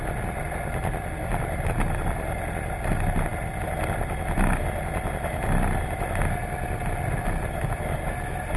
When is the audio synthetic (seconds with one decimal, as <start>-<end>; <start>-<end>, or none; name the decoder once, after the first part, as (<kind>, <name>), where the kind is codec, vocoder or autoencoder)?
none